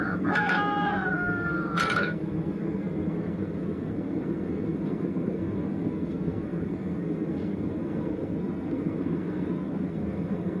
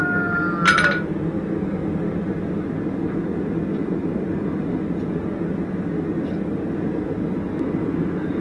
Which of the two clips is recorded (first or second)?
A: second